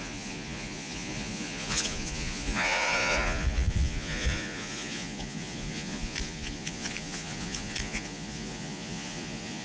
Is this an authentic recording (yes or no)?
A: no